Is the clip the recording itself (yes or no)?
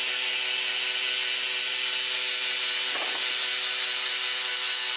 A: yes